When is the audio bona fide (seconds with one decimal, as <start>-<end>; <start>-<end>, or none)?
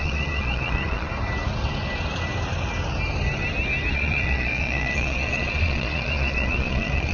1.1-3.9